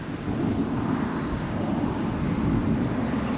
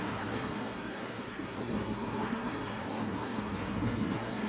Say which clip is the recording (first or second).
first